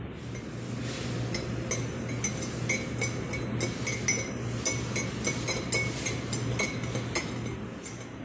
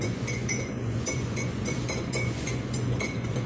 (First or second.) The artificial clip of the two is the second